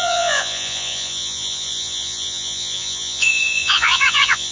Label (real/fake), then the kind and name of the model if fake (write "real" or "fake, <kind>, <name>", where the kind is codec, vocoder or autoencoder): fake, vocoder, Vocos